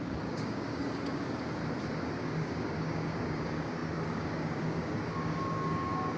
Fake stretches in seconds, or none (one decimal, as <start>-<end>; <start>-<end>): 0.0-1.6; 2.2-6.2